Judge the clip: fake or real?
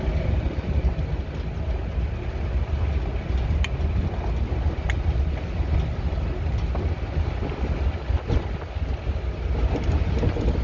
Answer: real